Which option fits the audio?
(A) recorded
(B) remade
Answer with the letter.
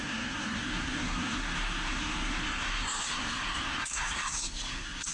B